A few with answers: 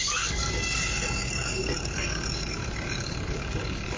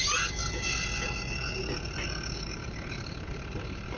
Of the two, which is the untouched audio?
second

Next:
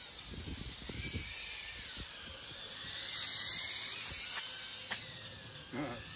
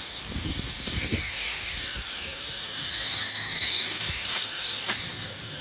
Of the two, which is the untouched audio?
first